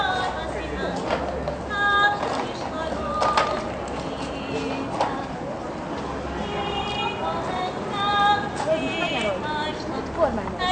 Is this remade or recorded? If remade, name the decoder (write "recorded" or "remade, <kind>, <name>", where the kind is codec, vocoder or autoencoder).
recorded